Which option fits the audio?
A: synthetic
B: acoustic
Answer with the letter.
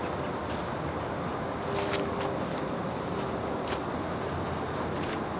B